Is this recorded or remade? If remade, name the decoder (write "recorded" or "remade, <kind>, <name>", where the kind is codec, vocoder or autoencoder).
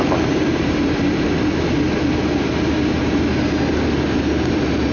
recorded